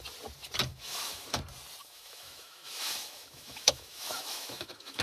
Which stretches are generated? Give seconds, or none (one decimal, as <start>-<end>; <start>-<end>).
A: 0.7-1.4; 1.8-5.0